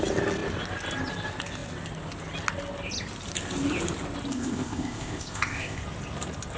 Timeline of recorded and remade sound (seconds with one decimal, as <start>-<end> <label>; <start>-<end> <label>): 0.0-4.3 recorded; 4.3-5.8 remade; 5.8-6.6 recorded